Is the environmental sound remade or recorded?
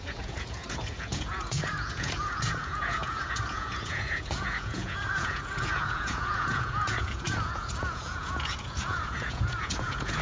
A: remade